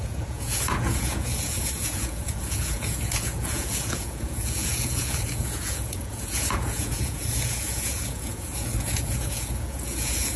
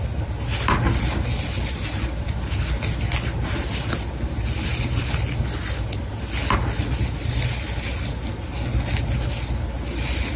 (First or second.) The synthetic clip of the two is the first